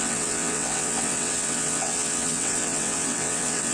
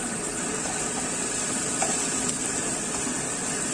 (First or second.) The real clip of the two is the second